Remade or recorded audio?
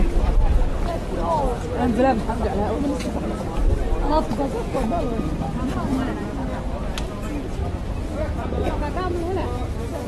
recorded